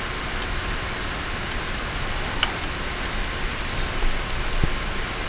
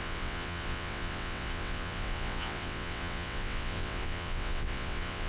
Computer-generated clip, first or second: second